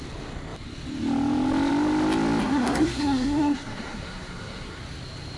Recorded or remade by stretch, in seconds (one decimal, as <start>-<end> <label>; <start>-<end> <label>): 0.0-2.4 recorded; 2.4-4.8 remade; 4.8-5.4 recorded